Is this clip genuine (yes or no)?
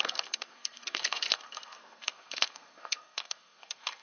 no